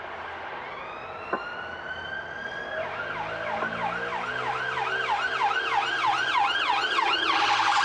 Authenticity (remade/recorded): recorded